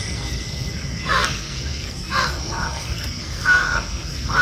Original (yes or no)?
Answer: no